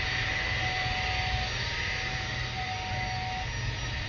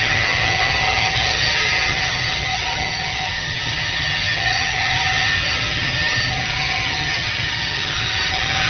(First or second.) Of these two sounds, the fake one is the second